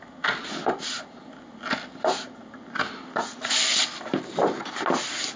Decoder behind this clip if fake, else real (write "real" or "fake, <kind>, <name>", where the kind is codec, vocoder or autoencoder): real